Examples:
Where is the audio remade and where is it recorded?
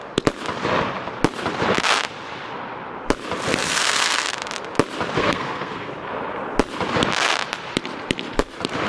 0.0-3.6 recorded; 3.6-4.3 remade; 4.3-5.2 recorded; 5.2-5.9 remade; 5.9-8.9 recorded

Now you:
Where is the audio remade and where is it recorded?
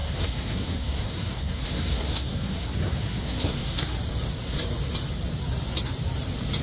0.0-4.0 remade; 4.0-6.6 recorded